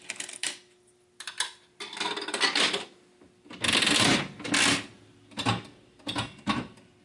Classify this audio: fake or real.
real